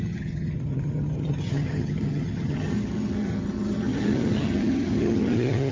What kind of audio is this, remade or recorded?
remade